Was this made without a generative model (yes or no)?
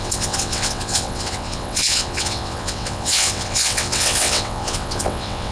no